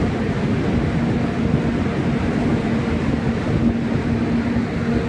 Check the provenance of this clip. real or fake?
real